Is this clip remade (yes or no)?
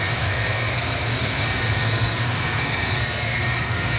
yes